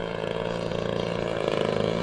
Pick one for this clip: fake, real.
fake